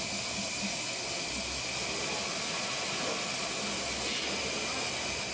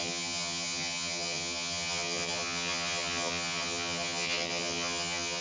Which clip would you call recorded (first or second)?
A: first